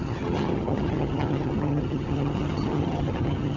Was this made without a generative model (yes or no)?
no